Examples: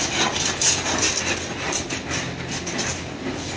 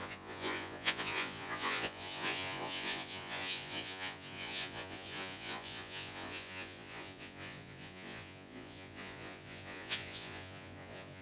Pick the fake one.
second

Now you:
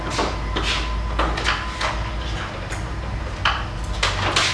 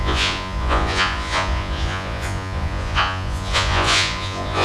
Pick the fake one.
second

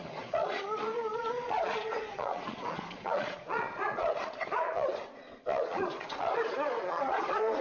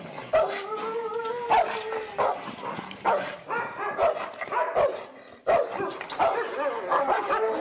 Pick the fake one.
first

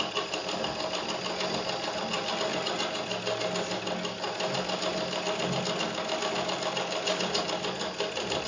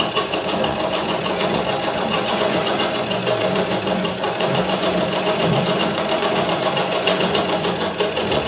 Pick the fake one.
second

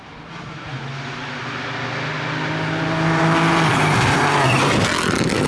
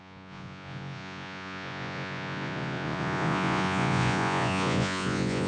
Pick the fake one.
second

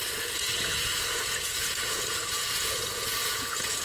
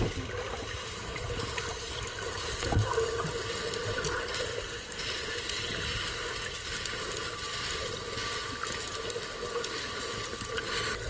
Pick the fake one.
first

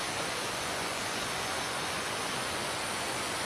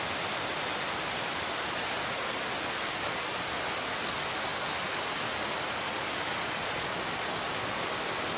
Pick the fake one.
first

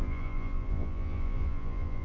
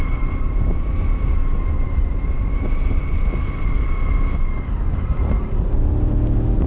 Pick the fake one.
first